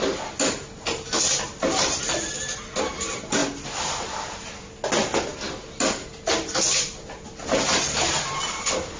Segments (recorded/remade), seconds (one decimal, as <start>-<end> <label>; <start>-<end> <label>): 0.0-9.0 recorded